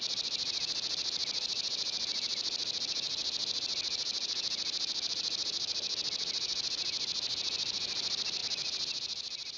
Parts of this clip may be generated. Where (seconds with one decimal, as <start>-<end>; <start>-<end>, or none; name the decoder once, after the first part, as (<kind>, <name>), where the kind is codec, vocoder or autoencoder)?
none